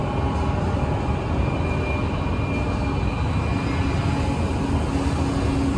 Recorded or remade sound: recorded